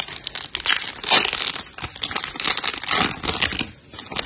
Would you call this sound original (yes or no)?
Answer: yes